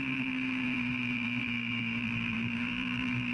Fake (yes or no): yes